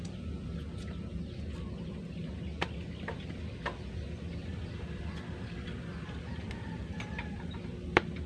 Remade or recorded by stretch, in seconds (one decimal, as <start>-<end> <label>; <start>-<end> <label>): 0.0-8.3 recorded